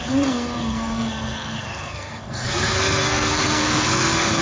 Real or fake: fake